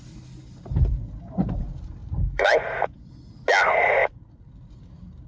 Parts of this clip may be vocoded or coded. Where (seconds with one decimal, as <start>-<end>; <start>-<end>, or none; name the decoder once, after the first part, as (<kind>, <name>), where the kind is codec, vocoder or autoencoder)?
2.0-3.1 (vocoder, BigVGAN v2); 4.0-4.8